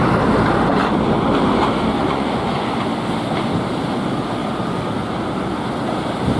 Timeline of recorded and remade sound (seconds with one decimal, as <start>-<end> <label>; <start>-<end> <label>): 0.0-2.0 recorded; 2.0-2.7 remade; 2.7-6.4 recorded

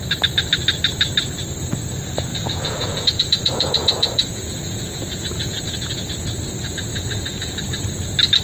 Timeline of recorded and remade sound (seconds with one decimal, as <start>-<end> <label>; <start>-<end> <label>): 0.0-2.3 recorded; 2.3-6.1 remade; 6.1-6.9 recorded; 6.9-7.6 remade; 7.6-8.4 recorded

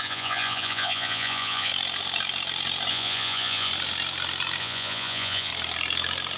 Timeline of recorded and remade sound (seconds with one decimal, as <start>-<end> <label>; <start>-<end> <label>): 0.0-1.7 remade; 1.7-2.9 recorded; 2.9-3.7 remade; 3.7-4.6 recorded; 4.6-5.5 remade; 5.5-6.4 recorded

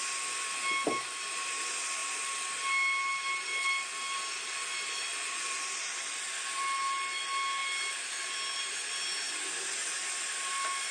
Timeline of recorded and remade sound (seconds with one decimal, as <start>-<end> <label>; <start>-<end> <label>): 0.0-5.1 recorded; 5.1-5.6 remade; 5.6-10.9 recorded

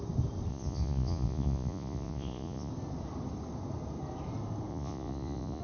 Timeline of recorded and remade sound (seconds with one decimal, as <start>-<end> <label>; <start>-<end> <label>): 0.0-0.5 recorded; 0.5-2.7 remade; 2.7-4.7 recorded; 4.7-5.6 remade